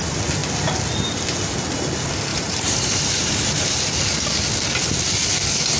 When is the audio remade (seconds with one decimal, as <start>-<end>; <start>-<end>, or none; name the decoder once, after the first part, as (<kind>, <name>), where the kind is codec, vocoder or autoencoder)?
2.3-4.0 (vocoder, BigVGAN v2)